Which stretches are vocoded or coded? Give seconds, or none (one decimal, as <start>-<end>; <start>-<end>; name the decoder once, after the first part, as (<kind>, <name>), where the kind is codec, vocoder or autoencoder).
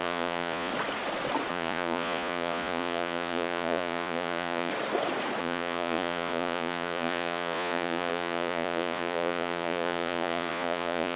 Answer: 0.0-0.7 (vocoder, Vocos); 1.5-4.7; 5.4-11.2